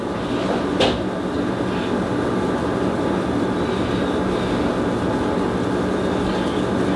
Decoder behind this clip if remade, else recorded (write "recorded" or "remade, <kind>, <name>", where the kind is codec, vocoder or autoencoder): recorded